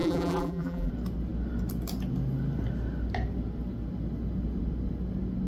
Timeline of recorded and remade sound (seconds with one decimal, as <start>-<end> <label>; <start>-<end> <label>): 0.0-0.9 remade; 0.9-5.5 recorded